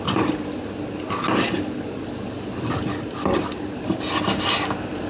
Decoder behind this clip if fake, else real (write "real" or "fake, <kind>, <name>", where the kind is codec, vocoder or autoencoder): real